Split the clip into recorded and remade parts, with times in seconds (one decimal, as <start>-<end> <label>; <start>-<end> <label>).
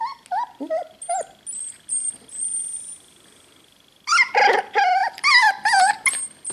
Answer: 0.0-1.6 recorded; 1.6-4.3 remade; 4.3-5.0 recorded; 5.0-5.9 remade; 5.9-6.5 recorded